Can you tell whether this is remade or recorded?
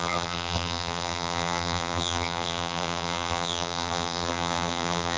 remade